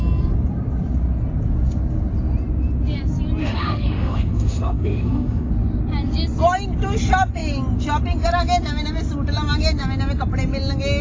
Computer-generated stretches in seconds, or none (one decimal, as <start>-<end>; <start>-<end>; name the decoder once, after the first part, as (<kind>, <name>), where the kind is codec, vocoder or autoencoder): 3.4-5.5 (autoencoder, DAC-VAE)